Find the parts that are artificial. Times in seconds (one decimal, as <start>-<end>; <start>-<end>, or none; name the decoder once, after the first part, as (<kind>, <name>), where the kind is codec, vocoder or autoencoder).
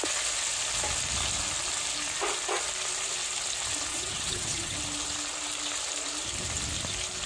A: 3.9-4.8 (vocoder, WaveNeXt)